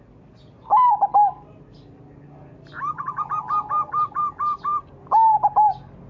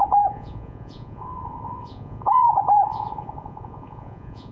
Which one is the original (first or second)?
first